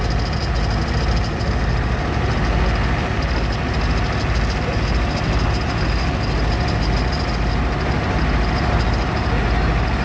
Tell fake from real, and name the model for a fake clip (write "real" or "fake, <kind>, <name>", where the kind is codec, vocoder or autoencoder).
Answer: real